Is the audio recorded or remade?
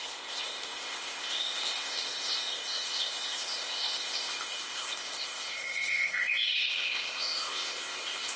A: remade